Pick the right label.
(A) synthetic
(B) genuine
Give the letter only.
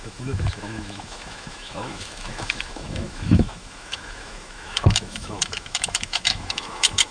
A